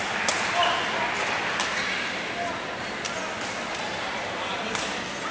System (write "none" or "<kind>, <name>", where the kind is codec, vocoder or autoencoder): none